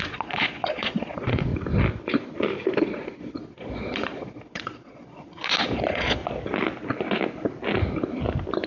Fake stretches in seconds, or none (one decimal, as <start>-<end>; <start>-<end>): 0.0-1.5; 2.8-6.2